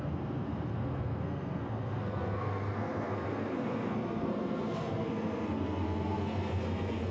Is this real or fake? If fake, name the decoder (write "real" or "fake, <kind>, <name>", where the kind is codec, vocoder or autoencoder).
fake, codec, SNAC